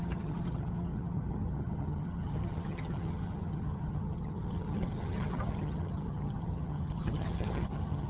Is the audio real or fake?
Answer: fake